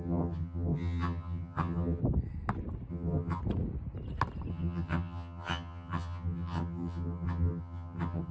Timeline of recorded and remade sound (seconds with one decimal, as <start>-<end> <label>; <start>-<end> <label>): 0.0-2.0 remade; 2.0-2.9 recorded; 2.9-3.4 remade; 3.4-4.5 recorded; 4.5-8.3 remade